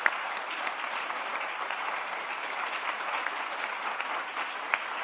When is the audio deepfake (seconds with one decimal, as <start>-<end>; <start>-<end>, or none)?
none